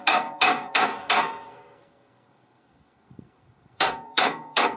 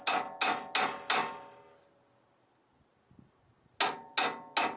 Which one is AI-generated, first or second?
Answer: first